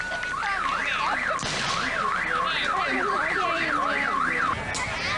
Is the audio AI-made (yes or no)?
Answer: no